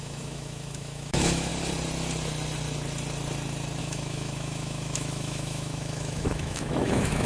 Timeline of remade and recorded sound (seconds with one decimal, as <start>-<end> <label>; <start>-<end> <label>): 0.0-1.5 remade; 1.5-3.8 recorded; 3.8-7.3 remade